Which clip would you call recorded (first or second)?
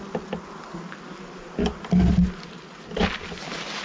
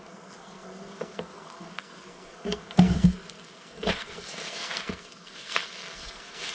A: first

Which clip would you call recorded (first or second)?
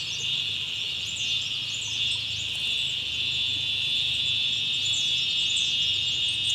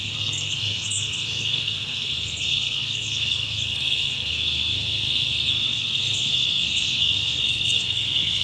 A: first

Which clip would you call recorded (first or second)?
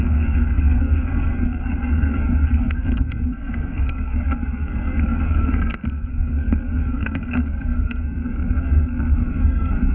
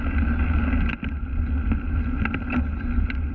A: second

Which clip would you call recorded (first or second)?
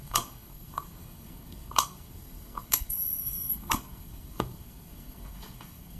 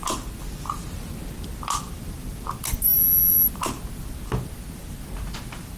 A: second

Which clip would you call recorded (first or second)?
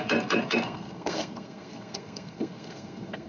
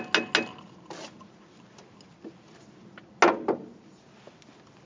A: second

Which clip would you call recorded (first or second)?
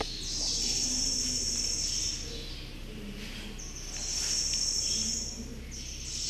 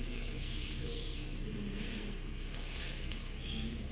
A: first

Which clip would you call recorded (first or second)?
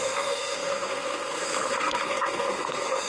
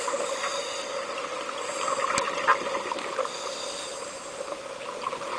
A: second